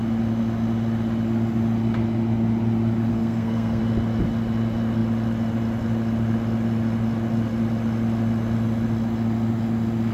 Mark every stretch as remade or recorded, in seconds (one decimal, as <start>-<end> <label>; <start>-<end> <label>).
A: 0.0-3.1 recorded; 3.1-3.8 remade; 3.8-10.1 recorded